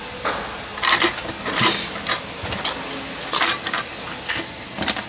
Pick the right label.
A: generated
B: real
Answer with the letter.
B